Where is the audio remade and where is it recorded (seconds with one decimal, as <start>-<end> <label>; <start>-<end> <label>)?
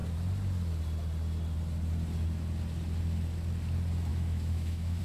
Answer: 0.0-4.1 recorded; 4.1-5.0 remade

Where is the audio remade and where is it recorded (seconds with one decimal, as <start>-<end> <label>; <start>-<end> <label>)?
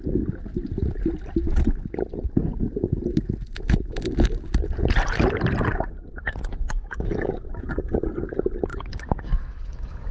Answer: 0.0-6.5 recorded; 6.5-7.7 remade; 7.7-8.7 recorded; 8.7-10.1 remade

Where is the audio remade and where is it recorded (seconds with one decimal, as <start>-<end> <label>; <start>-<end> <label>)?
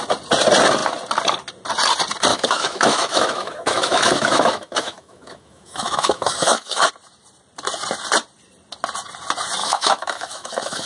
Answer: 0.0-2.3 recorded; 2.3-6.9 remade; 6.9-9.6 recorded; 9.6-10.9 remade